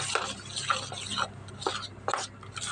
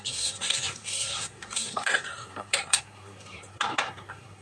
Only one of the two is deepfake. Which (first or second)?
second